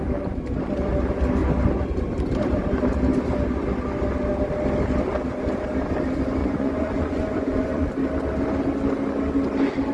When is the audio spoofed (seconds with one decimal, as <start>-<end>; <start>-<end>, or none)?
6.4-7.9